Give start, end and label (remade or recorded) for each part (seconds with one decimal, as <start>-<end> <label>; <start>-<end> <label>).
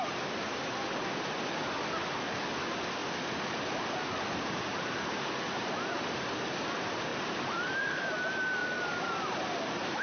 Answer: 0.0-7.1 recorded; 7.1-8.1 remade; 8.1-8.6 recorded; 8.6-9.1 remade; 9.1-10.0 recorded